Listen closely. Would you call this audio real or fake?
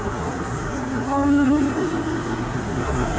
fake